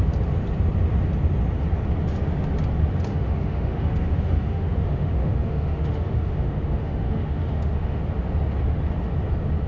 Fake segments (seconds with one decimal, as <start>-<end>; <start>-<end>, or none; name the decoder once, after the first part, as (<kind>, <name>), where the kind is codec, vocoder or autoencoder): 3.1-8.0 (autoencoder, DAC-VAE)